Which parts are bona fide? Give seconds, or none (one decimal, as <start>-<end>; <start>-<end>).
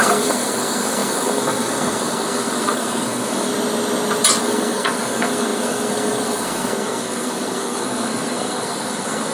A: 3.5-4.4